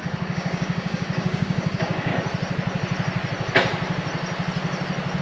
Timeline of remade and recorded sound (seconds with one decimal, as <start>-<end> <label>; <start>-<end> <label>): 0.0-2.1 remade; 2.1-5.2 recorded

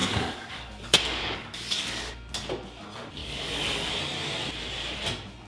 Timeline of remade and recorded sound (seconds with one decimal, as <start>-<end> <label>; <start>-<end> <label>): 0.0-2.1 remade; 2.1-3.2 recorded; 3.2-3.9 remade; 3.9-5.5 recorded

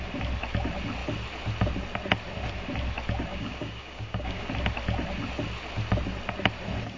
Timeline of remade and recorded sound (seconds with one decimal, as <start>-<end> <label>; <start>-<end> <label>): 0.0-3.3 recorded; 3.3-4.5 remade; 4.5-7.0 recorded

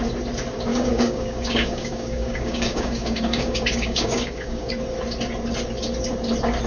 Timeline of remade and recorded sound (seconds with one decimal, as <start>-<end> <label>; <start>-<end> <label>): 0.0-0.7 recorded; 0.7-4.7 remade; 4.7-6.7 recorded

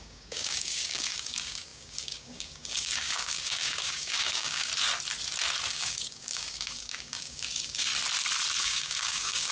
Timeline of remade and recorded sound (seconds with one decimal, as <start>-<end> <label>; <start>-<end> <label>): 0.0-4.7 remade; 4.7-5.7 recorded; 5.7-7.9 remade; 7.9-8.6 recorded; 8.6-9.5 remade

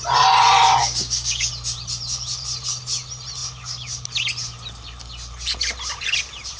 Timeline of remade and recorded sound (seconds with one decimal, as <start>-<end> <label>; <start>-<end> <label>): 0.0-0.8 recorded; 0.8-1.5 remade; 1.5-6.6 recorded

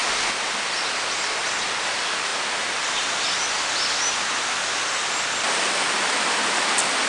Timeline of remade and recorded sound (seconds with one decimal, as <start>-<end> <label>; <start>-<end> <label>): 0.0-7.1 recorded